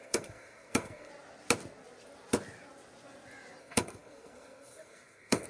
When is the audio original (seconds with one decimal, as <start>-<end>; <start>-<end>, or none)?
1.1-3.6

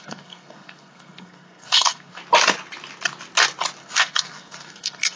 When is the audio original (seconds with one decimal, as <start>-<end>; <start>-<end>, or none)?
2.2-3.8

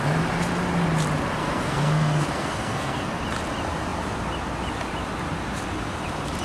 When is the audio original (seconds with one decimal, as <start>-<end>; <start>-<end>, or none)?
0.0-1.4; 3.2-6.4

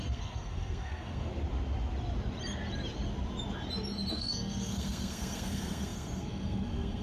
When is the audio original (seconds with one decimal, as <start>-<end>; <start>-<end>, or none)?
1.3-4.1

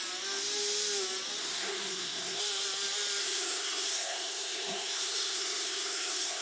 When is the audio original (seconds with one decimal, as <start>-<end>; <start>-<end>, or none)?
0.0-1.4; 2.4-3.2

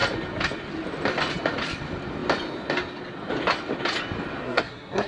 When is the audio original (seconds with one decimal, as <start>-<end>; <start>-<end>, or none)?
0.0-4.4